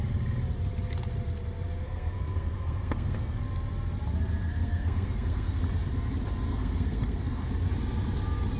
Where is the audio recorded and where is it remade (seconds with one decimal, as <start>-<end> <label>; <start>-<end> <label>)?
0.0-1.8 recorded; 1.8-3.4 remade; 3.4-4.4 recorded; 4.4-5.6 remade; 5.6-6.5 recorded; 6.5-7.5 remade; 7.5-8.6 recorded